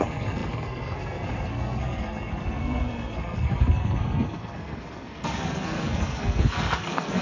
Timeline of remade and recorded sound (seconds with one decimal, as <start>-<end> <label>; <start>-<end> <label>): 0.0-7.2 remade